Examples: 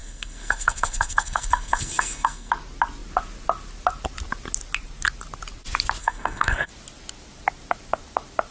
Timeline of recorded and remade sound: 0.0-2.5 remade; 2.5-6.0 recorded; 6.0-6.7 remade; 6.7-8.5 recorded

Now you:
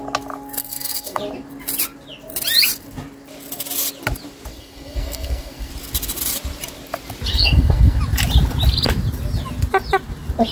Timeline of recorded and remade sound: 0.0-0.6 recorded; 0.6-1.2 remade; 1.2-4.5 recorded; 4.5-5.7 remade; 5.7-7.3 recorded; 7.3-8.0 remade; 8.0-10.5 recorded

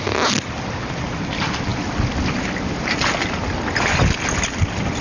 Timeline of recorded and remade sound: 0.0-5.0 recorded